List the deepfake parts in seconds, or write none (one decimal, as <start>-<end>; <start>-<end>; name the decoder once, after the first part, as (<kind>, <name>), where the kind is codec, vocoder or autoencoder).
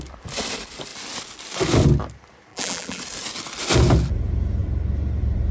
2.5-3.0 (vocoder, BigVGAN v2)